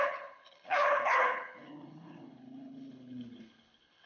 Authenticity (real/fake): fake